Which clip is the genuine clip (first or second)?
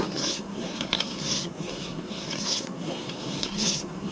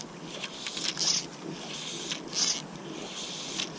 second